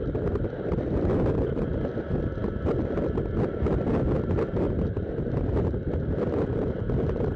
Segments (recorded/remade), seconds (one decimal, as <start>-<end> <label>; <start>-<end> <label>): 0.0-7.4 recorded

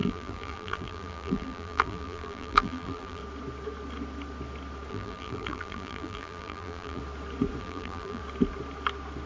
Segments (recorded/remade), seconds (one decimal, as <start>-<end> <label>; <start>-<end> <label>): 0.0-3.2 remade; 3.2-4.9 recorded; 4.9-7.0 remade; 7.0-7.6 recorded; 7.6-8.2 remade; 8.2-9.3 recorded